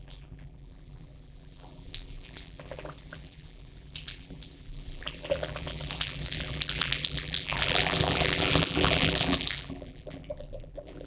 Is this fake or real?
fake